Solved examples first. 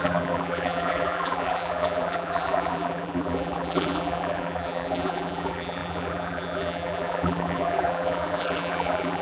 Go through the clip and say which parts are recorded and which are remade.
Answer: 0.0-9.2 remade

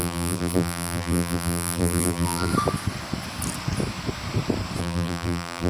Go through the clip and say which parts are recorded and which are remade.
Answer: 0.0-2.5 remade; 2.5-4.8 recorded; 4.8-5.7 remade

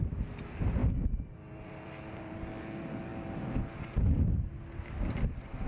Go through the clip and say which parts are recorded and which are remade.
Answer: 0.0-0.8 recorded; 0.8-2.3 remade; 2.3-5.7 recorded

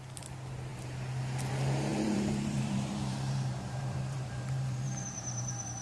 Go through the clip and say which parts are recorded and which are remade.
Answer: 0.0-1.9 recorded; 1.9-5.8 remade